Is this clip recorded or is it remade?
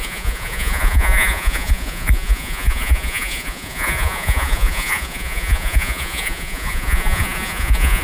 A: remade